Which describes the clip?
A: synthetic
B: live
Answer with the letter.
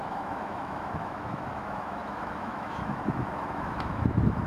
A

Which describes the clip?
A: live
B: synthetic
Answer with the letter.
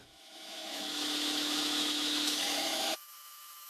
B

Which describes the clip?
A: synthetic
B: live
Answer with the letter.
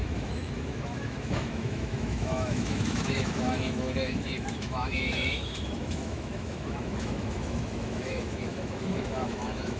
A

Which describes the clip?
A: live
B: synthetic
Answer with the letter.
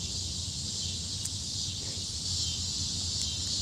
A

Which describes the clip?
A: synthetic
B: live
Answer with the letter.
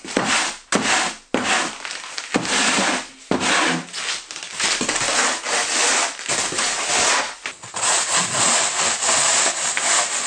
B